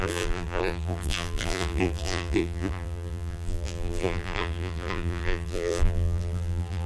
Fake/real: fake